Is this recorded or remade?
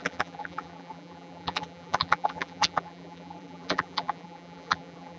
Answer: remade